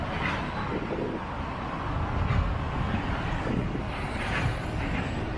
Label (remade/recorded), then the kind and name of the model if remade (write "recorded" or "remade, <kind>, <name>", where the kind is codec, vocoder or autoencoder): recorded